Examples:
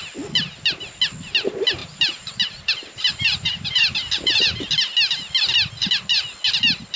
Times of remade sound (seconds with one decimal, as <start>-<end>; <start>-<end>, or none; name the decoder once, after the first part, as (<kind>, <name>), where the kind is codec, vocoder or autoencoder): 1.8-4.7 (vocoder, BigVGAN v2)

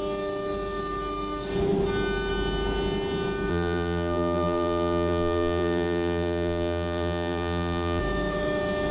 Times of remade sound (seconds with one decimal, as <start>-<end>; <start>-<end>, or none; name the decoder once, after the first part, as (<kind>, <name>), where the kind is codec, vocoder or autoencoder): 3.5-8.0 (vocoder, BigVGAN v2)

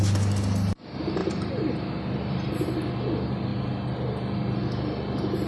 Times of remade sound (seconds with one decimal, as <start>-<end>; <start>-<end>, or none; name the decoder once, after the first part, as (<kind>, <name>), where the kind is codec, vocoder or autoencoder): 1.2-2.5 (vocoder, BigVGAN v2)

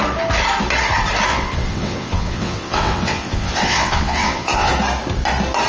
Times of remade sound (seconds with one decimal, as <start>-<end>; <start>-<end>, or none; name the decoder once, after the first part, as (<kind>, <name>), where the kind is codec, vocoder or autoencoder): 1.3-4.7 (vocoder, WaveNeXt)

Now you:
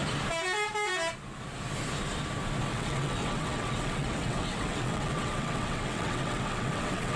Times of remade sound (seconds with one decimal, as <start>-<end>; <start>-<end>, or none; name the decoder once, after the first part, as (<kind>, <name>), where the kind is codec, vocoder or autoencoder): 2.7-7.2 (vocoder, WaveNeXt)